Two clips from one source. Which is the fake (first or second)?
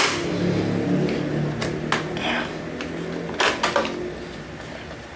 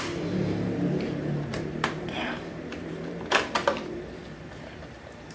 second